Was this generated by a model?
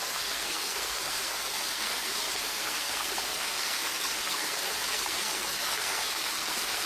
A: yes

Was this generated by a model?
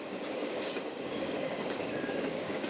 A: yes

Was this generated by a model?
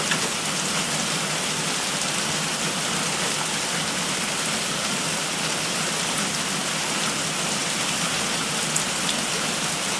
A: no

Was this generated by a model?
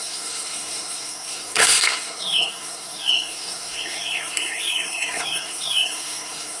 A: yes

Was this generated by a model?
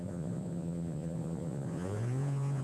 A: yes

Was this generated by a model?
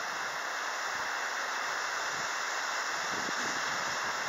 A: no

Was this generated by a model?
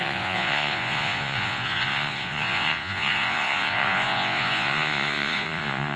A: yes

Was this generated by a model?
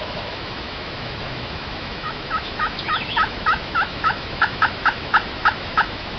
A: yes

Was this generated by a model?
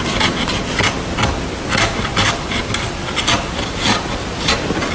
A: no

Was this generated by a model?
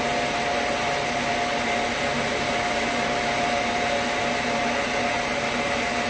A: no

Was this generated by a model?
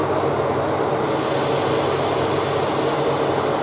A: no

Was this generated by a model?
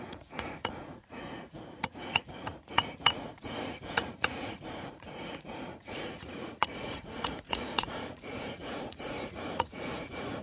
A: yes